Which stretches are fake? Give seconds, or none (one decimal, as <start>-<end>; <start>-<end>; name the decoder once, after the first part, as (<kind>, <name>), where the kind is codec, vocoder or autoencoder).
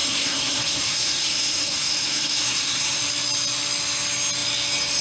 0.0-3.0 (codec, SNAC)